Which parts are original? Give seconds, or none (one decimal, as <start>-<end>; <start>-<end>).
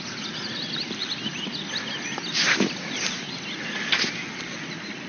0.0-5.1